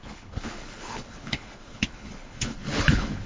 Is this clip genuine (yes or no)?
no